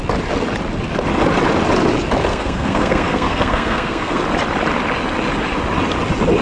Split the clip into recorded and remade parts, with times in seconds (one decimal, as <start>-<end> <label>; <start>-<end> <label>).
0.0-2.3 recorded; 2.3-4.2 remade; 4.2-6.4 recorded